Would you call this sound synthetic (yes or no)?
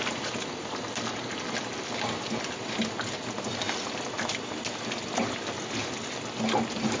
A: no